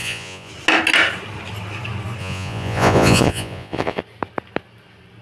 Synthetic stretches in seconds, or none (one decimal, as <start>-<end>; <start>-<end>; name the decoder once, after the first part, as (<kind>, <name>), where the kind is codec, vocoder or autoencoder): 0.0-0.5 (vocoder, Vocos); 2.2-4.0